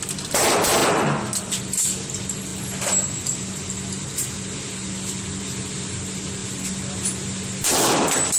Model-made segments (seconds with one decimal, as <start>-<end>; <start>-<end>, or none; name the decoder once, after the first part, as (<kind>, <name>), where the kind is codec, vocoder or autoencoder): none